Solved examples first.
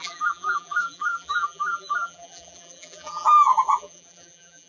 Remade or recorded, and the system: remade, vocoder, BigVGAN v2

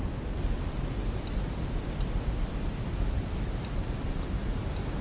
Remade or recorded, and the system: recorded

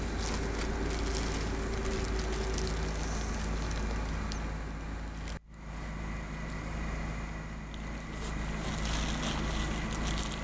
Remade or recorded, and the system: recorded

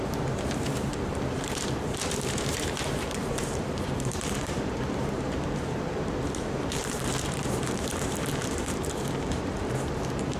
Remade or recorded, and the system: remade, vocoder, BigVGAN v2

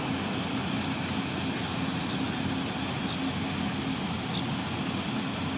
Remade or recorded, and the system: recorded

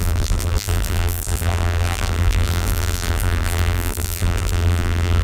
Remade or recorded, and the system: remade, vocoder, BigVGAN v2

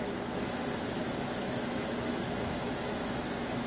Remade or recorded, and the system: remade, autoencoder, DAC-VAE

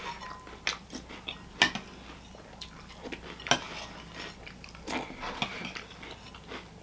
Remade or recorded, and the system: recorded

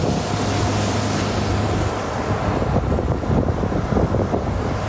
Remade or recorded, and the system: recorded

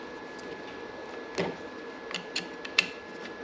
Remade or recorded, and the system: recorded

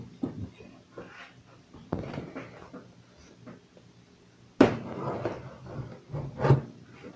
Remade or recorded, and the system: recorded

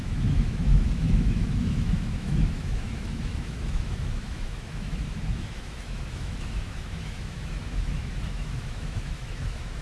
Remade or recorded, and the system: remade, autoencoder, DAC-VAE